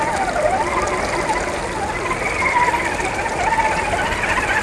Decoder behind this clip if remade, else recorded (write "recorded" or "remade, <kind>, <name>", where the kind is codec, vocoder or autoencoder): recorded